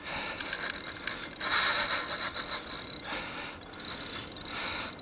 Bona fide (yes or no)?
yes